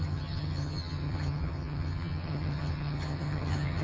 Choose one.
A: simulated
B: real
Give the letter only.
A